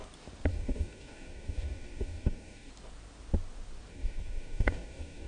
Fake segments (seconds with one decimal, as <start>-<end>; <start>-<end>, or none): 0.5-2.7; 3.9-5.3